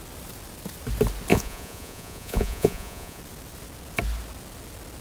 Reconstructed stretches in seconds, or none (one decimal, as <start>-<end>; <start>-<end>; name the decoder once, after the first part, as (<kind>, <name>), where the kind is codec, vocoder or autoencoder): 1.3-3.2 (vocoder, Vocos)